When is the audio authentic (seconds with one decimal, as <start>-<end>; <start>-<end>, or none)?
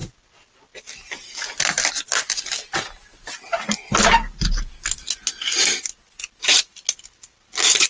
0.0-7.9